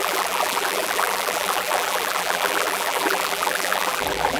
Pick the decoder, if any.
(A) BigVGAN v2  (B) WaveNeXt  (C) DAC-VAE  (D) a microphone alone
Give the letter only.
A